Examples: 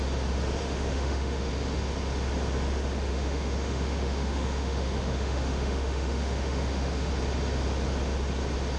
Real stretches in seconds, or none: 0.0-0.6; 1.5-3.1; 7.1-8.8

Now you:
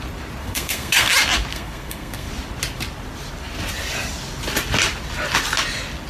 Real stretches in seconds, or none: 0.0-0.4; 1.1-1.5; 2.3-6.1

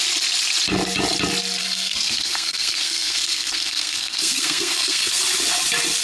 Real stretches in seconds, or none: 0.0-1.6; 5.2-6.0

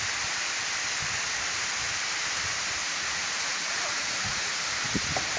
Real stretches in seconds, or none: 0.0-2.8; 4.6-5.4

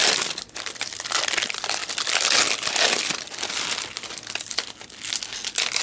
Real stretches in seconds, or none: 0.0-5.8

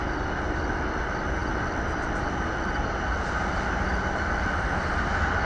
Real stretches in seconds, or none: 0.0-5.5